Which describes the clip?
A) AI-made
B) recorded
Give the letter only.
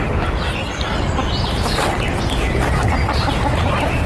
B